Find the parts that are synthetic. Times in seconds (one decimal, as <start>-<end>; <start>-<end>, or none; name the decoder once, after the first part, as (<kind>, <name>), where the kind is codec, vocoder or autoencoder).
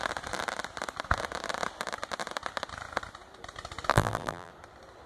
3.9-4.5 (vocoder, BigVGAN v2)